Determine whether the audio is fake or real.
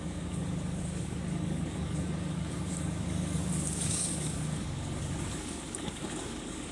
fake